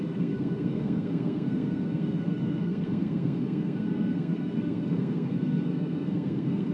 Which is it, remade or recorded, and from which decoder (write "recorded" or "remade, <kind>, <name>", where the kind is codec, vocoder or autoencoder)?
remade, codec, SNAC